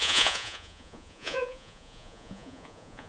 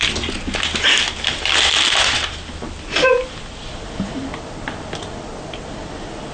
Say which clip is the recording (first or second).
second